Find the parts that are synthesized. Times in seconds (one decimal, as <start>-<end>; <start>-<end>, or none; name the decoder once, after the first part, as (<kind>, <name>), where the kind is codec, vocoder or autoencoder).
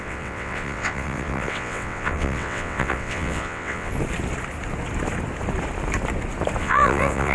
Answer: 0.0-3.9 (vocoder, WaveNeXt); 6.6-7.3